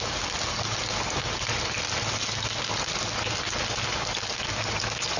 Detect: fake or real real